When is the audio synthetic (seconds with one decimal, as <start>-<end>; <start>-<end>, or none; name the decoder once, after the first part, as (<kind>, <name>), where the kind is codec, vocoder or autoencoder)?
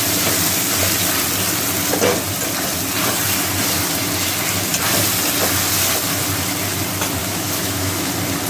7.2-8.1 (autoencoder, DAC-VAE)